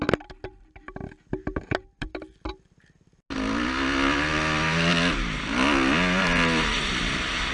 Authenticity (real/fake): real